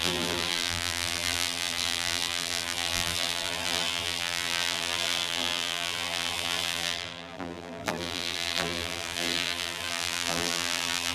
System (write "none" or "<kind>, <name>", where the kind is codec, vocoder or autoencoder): vocoder, BigVGAN v2